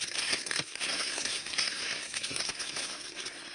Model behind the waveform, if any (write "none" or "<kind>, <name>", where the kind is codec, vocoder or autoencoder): codec, SNAC